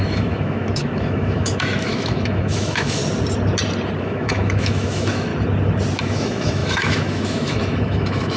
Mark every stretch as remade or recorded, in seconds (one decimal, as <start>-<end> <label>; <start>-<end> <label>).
0.0-3.0 remade; 3.0-4.0 recorded; 4.0-5.3 remade; 5.3-6.0 recorded; 6.0-8.4 remade

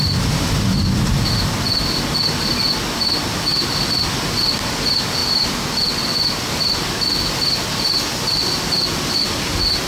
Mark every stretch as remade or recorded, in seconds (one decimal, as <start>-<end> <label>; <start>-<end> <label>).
0.0-9.9 recorded

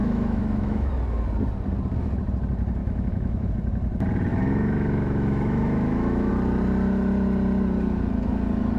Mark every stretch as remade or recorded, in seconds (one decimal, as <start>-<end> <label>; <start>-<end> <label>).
0.0-0.9 remade; 0.9-2.8 recorded; 2.8-3.5 remade; 3.5-4.3 recorded; 4.3-6.3 remade; 6.3-8.8 recorded